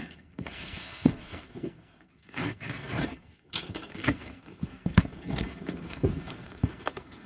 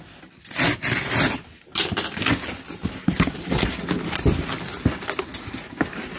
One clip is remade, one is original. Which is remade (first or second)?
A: first